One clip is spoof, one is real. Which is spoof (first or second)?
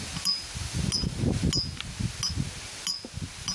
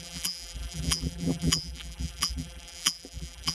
second